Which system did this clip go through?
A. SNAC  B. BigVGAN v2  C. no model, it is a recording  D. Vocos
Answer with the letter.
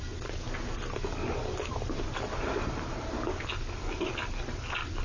C